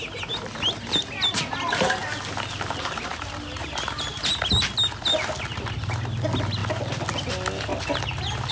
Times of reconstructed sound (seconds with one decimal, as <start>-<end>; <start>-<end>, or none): none